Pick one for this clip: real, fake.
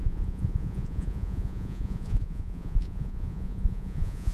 fake